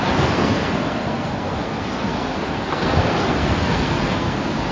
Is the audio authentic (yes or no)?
no